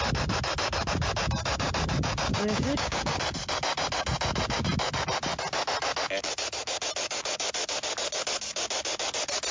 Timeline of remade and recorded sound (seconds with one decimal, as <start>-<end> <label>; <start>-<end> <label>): 0.0-2.3 recorded; 2.3-3.2 remade; 3.2-9.5 recorded